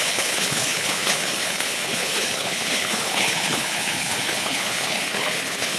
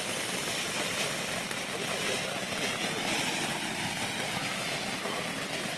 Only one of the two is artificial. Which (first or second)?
first